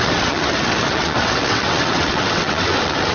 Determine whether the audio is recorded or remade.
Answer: remade